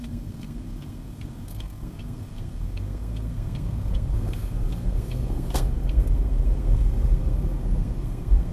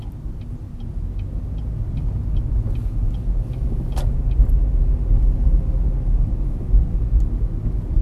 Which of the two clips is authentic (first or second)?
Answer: second